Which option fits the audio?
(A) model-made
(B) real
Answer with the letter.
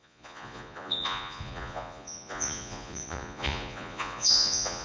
A